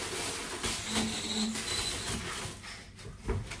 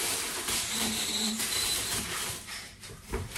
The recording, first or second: first